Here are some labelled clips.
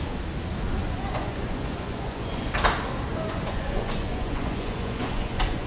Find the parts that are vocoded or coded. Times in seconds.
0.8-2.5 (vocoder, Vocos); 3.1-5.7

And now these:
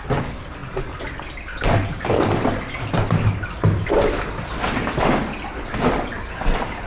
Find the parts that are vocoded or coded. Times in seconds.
none